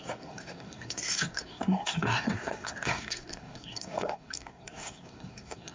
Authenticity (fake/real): fake